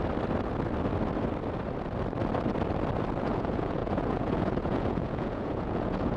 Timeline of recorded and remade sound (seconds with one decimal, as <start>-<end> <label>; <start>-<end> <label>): 0.0-3.2 recorded; 3.2-6.2 remade